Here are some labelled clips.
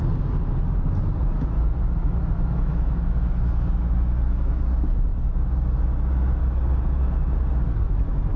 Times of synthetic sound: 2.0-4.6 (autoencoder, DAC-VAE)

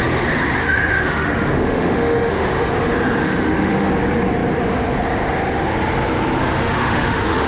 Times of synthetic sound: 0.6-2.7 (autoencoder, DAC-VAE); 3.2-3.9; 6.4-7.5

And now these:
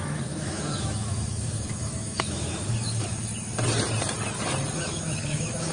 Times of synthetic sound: 0.0-3.3 (autoencoder, DAC-VAE); 4.8-5.7